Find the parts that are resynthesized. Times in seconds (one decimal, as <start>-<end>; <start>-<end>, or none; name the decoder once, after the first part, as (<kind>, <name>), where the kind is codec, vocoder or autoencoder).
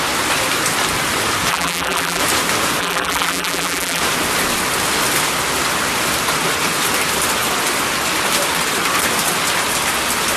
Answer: 1.5-2.2 (vocoder, BigVGAN v2); 2.8-4.0